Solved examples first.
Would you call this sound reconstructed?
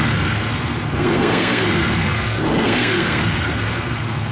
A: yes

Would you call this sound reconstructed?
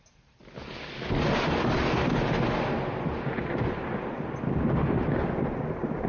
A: no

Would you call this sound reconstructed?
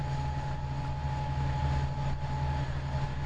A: no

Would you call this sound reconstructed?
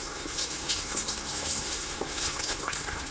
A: yes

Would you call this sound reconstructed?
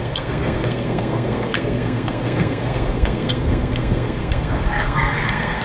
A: yes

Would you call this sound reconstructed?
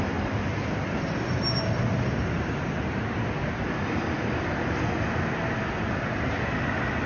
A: no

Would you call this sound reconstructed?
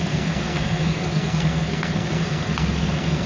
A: yes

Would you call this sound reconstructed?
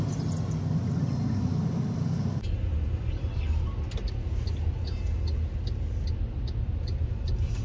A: no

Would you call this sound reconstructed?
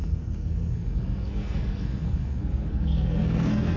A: yes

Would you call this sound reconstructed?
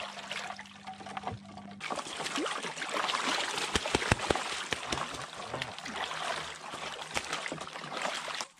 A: no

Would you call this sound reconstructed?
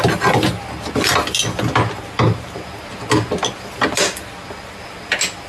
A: no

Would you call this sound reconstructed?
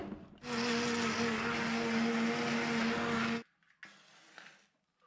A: no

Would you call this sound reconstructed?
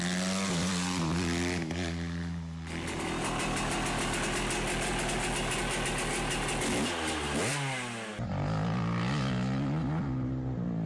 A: no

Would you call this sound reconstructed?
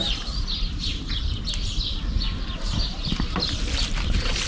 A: no